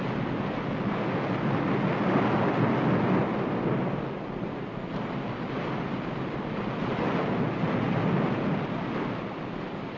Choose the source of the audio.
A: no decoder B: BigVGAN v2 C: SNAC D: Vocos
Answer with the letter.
A